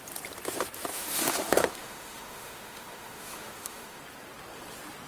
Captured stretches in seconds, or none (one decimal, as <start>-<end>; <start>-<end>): 0.0-0.9; 4.0-5.1